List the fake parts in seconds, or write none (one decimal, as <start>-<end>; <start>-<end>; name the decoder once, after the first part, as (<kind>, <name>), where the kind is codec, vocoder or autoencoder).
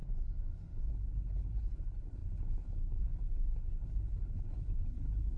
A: 0.9-5.4 (codec, HILCodec)